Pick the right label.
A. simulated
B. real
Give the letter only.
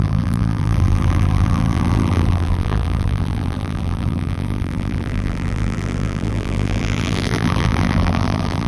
A